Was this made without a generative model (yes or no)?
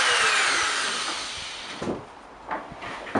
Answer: yes